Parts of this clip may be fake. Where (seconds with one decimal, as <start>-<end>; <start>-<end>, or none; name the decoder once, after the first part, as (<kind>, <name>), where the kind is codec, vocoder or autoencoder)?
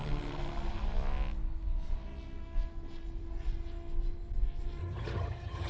4.8-5.7 (vocoder, HiFi-GAN)